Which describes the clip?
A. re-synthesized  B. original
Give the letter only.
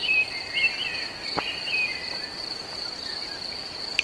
B